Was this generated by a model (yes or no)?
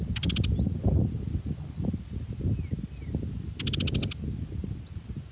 no